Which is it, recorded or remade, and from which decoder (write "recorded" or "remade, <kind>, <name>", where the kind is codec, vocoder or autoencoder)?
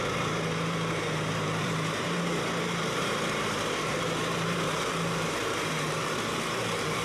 remade, vocoder, BigVGAN v2